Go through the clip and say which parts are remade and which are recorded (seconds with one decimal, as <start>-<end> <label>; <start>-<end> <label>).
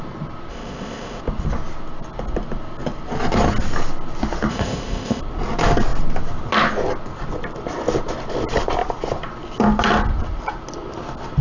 0.0-0.5 recorded; 0.5-1.2 remade; 1.2-4.5 recorded; 4.5-5.2 remade; 5.2-11.4 recorded